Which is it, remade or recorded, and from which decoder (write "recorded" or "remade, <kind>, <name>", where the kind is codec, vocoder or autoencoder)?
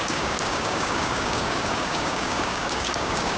remade, codec, DAC